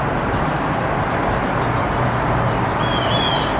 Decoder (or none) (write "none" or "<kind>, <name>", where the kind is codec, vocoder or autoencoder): none